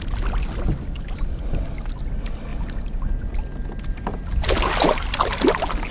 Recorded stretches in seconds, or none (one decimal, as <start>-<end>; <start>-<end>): 0.0-2.5; 3.1-4.1; 5.0-5.9